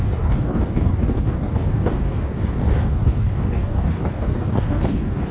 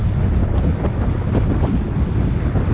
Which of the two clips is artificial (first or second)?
first